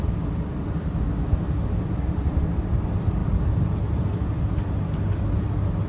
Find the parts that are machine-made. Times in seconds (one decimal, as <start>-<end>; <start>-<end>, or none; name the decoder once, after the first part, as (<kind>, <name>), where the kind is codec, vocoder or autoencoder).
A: none